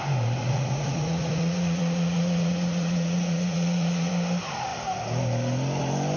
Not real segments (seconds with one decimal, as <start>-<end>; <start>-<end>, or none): 0.4-4.1